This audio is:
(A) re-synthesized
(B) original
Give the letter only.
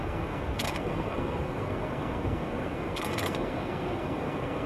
A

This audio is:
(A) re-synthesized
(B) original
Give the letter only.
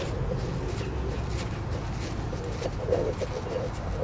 B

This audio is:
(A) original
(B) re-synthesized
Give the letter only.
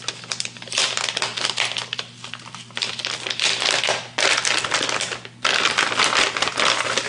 A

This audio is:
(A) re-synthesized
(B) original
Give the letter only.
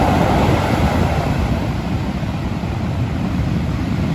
A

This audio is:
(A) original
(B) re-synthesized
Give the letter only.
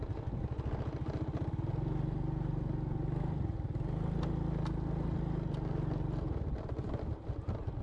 A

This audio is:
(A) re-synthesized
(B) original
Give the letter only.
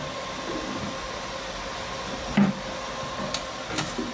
B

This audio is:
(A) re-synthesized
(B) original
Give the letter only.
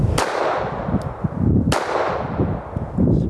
B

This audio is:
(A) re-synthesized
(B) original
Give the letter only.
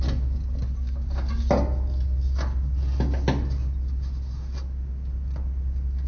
B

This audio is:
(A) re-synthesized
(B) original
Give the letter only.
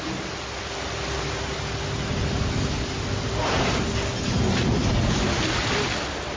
B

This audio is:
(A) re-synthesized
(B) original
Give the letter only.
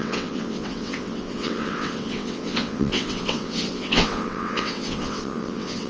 A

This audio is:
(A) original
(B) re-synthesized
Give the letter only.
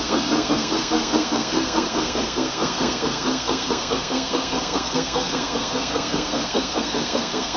B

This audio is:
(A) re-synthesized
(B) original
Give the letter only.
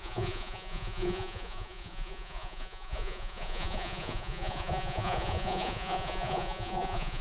A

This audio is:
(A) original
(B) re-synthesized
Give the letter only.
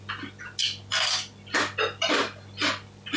A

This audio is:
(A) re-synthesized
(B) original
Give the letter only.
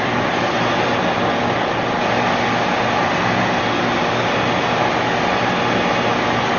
B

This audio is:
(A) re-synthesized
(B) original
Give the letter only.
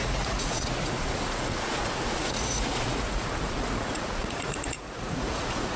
A